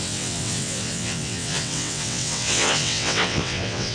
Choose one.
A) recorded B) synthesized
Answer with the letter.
B